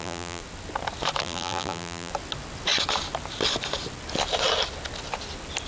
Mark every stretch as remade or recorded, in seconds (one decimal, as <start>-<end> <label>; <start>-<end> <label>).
0.0-0.4 remade; 0.4-1.2 recorded; 1.2-2.1 remade; 2.1-5.7 recorded